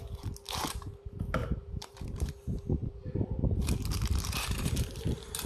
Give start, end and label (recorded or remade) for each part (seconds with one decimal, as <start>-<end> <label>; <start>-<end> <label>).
0.0-1.4 recorded; 1.4-2.3 remade; 2.3-2.8 recorded; 2.8-5.0 remade; 5.0-5.5 recorded